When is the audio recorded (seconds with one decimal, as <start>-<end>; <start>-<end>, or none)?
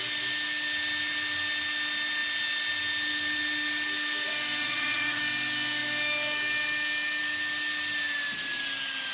0.0-4.6; 5.2-9.1